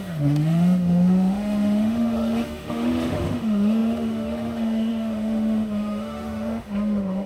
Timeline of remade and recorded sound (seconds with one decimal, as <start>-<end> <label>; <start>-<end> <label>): 0.0-7.3 remade